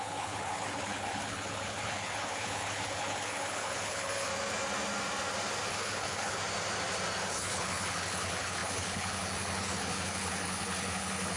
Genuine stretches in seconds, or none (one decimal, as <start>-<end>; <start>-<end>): 4.3-5.7; 6.4-7.3